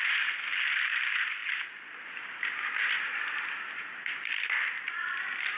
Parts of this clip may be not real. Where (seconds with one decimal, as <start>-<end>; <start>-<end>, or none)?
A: 0.0-1.4; 4.3-5.6